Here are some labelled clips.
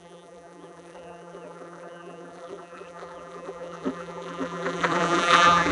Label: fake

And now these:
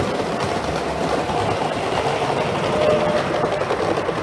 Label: real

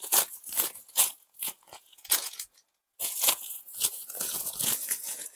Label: fake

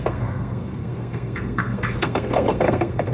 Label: fake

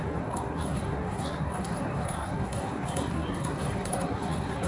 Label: fake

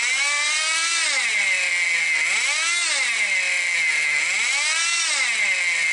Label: real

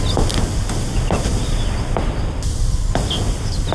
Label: real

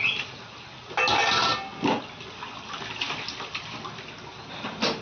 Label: real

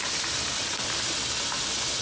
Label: real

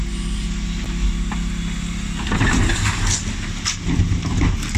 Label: real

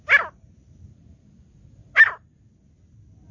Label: real